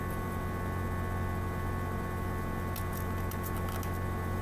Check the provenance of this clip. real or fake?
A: real